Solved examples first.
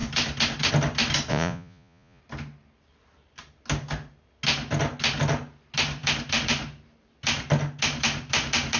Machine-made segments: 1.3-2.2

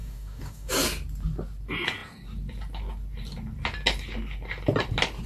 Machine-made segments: 0.0-0.7